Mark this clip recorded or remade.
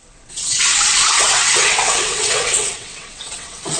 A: remade